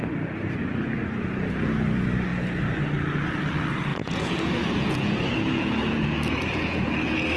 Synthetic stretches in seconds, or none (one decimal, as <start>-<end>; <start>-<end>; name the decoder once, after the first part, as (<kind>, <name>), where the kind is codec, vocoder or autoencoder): 3.9-6.9 (vocoder, Vocos)